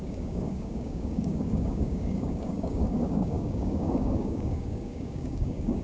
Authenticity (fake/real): fake